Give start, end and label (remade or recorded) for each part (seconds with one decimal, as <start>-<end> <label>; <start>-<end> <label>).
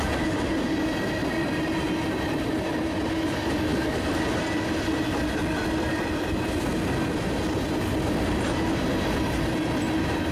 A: 0.0-10.3 recorded